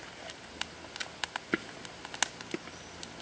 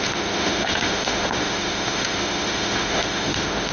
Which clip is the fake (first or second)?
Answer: second